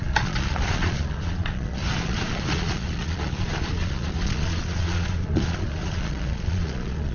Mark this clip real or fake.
fake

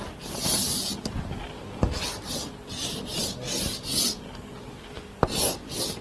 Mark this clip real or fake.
real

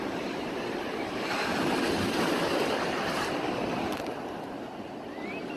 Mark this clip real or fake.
real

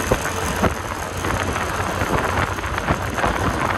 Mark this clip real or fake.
real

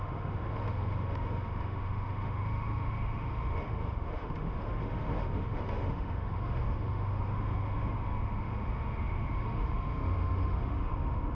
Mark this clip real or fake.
fake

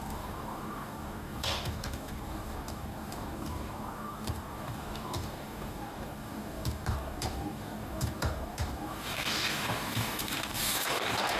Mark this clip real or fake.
fake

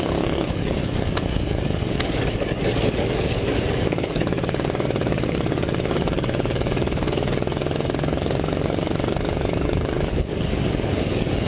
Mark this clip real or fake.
fake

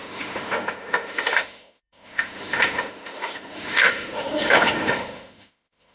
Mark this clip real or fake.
fake